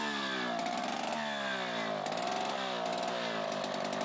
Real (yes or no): yes